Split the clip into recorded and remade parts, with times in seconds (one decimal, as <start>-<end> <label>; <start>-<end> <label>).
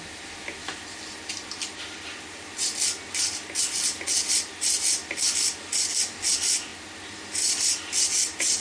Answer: 0.0-8.6 recorded